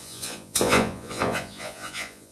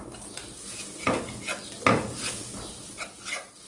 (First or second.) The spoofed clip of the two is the first